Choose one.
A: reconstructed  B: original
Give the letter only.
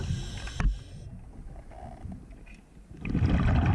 B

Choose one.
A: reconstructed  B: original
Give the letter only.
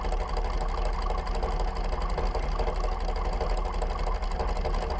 B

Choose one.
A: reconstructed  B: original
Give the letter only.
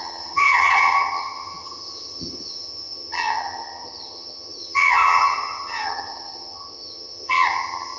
A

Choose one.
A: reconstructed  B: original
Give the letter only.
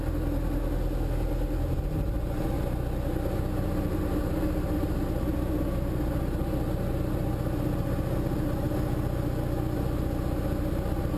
B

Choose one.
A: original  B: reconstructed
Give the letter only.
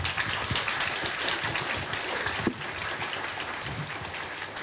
A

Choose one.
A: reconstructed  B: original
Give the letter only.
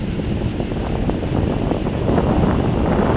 B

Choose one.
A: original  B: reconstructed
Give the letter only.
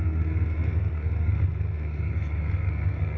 B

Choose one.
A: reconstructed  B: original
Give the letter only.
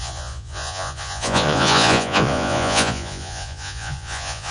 A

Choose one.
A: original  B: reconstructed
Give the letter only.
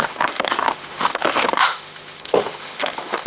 B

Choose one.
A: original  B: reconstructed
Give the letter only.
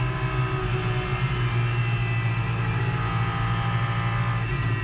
A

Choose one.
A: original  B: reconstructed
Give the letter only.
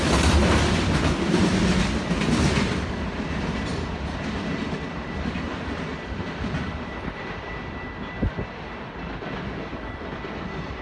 B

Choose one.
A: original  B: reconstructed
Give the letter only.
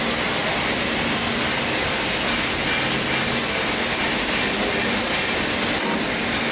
A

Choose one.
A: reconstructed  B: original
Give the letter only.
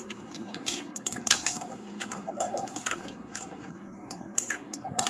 A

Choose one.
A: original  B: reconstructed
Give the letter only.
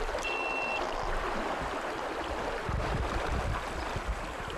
A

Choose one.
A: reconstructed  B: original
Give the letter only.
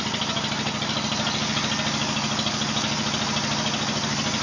B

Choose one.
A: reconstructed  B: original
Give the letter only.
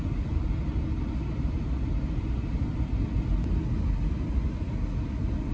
B